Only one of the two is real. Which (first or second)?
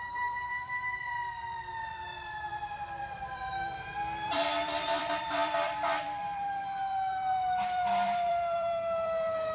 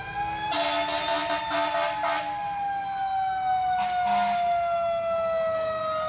second